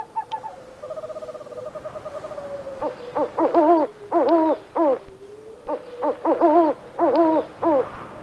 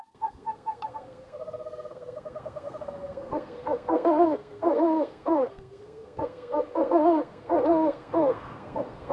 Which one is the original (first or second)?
first